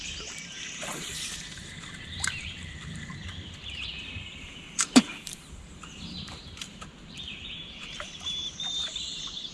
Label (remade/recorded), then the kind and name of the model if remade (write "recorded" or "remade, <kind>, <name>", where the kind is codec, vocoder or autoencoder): remade, vocoder, BigVGAN v2